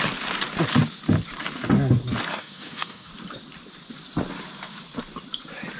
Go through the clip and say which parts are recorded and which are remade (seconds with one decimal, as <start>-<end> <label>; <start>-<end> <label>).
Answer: 0.0-2.3 recorded; 2.3-3.1 remade; 3.1-5.8 recorded